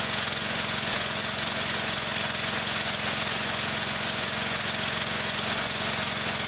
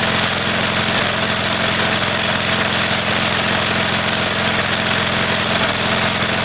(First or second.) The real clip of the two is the second